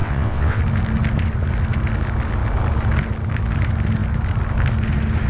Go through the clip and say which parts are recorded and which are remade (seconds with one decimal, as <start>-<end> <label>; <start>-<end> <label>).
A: 0.0-0.6 remade; 0.6-5.3 recorded